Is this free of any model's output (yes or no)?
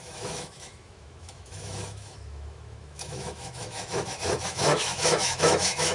no